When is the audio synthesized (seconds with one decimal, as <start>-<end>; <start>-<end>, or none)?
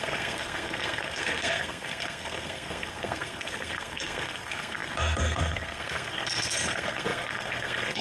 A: 0.0-8.0